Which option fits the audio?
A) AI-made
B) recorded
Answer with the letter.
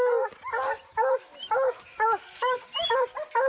B